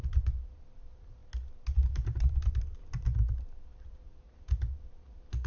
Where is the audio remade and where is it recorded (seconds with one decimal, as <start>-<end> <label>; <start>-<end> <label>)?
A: 0.0-1.2 remade; 1.2-2.5 recorded; 2.5-5.5 remade

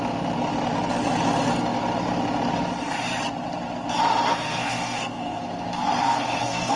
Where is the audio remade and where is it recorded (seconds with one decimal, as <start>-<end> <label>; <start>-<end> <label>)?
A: 0.0-4.3 recorded; 4.3-6.8 remade

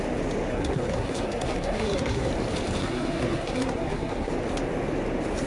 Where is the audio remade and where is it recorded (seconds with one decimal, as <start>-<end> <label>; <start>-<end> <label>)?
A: 0.0-0.5 recorded; 0.5-2.3 remade; 2.3-2.8 recorded; 2.8-4.3 remade; 4.3-5.5 recorded